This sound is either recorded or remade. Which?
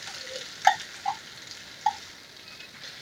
recorded